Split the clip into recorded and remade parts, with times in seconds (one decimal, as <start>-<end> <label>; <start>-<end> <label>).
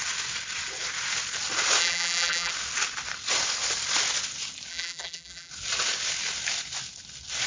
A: 0.0-1.8 recorded; 1.8-2.5 remade; 2.5-4.7 recorded; 4.7-5.5 remade; 5.5-7.5 recorded